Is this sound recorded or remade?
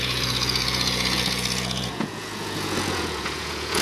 remade